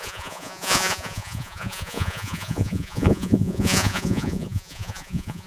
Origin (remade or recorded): remade